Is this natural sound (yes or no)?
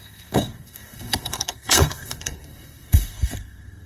no